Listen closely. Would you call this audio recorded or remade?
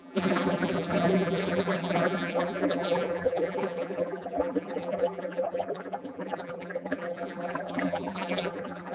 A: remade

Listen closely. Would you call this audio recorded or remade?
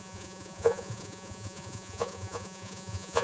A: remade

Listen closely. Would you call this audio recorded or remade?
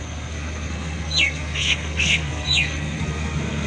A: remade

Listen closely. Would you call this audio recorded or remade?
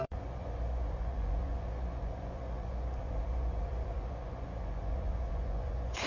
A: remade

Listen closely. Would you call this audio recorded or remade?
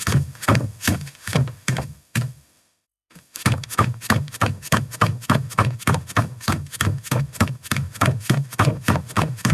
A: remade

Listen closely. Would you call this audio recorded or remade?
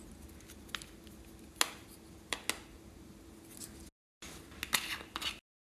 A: recorded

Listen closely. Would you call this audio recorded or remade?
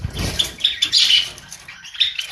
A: recorded